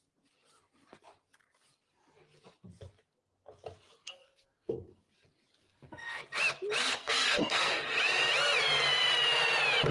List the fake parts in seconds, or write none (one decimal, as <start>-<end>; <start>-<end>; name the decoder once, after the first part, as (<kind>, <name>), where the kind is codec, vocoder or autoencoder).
4.0-5.0 (codec, SNAC); 5.6-6.2; 6.9-7.9